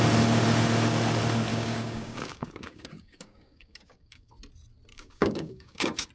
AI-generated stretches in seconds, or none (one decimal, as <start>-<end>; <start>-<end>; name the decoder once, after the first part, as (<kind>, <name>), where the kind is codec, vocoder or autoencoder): 1.5-4.3 (codec, DAC); 4.9-6.1